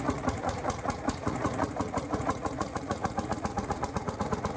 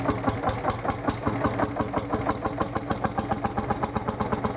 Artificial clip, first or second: first